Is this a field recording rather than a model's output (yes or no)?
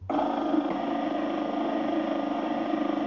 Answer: yes